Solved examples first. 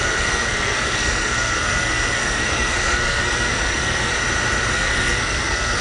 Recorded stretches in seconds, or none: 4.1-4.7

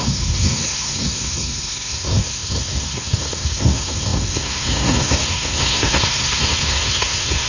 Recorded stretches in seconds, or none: none

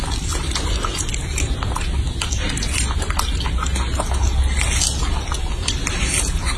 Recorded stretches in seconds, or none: 0.0-6.6

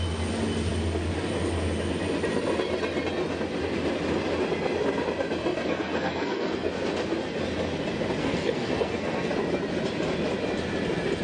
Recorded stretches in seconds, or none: 0.0-5.4; 6.7-8.2; 9.3-11.2

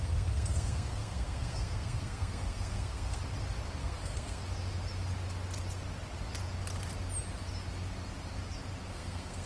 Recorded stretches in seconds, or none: 3.2-3.8; 4.4-8.9

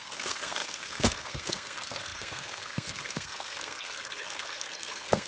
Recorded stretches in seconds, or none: none